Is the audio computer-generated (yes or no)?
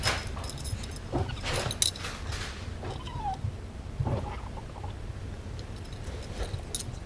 no